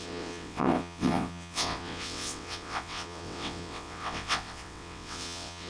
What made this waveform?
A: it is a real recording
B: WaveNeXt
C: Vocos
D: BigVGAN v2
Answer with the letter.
B